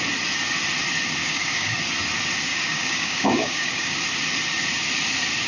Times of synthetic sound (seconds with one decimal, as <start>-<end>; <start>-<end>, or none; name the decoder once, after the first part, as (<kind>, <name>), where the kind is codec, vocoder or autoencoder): 1.2-1.8 (codec, DAC); 2.5-4.0